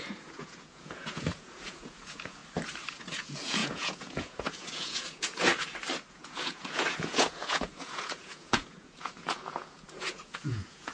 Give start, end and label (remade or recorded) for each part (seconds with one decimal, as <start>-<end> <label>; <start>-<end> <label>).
0.0-2.4 remade; 2.4-2.9 recorded; 2.9-5.5 remade; 5.5-6.1 recorded; 6.1-10.9 remade